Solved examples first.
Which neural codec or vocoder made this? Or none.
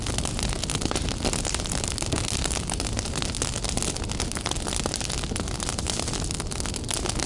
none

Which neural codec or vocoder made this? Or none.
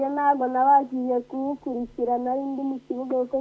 none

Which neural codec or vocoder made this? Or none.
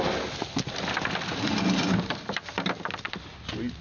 none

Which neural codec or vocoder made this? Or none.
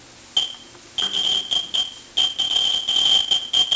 none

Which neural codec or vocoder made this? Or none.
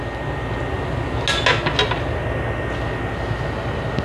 none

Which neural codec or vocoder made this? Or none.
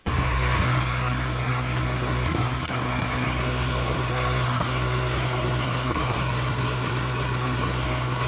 codec, SNAC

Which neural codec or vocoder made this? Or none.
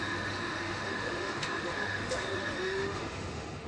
autoencoder, DAC-VAE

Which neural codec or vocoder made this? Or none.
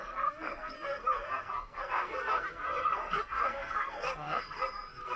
codec, SNAC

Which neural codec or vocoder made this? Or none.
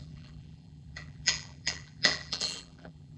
vocoder, BigVGAN v2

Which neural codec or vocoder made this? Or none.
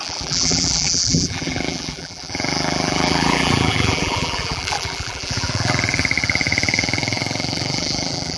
vocoder, BigVGAN v2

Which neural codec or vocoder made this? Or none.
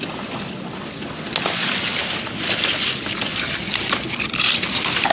vocoder, BigVGAN v2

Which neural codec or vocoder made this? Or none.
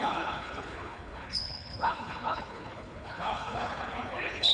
codec, HILCodec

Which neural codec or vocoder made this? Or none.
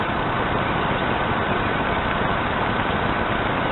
none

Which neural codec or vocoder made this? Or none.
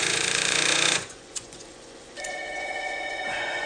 vocoder, Vocos